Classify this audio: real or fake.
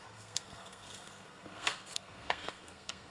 fake